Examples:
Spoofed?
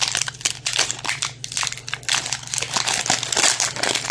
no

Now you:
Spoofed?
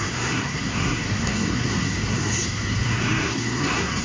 yes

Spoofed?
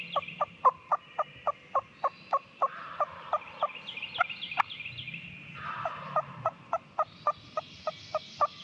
no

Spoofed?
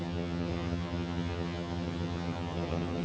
yes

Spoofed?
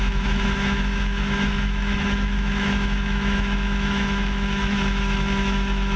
yes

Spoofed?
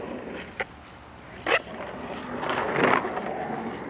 yes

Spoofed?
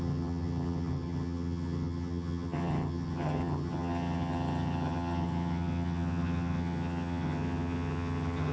yes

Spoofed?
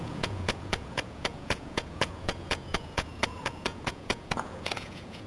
yes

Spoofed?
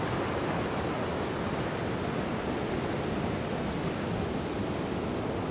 no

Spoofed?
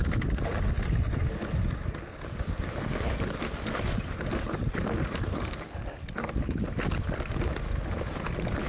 no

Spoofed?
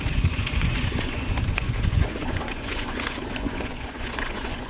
yes